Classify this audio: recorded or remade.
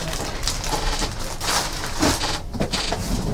recorded